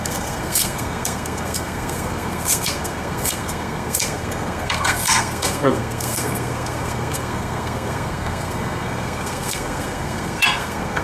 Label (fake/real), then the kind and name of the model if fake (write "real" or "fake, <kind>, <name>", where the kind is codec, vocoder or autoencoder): fake, codec, SNAC